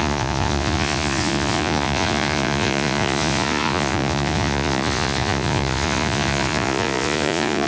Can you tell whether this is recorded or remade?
remade